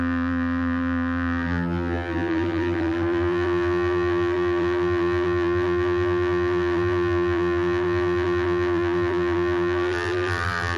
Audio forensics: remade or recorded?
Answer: remade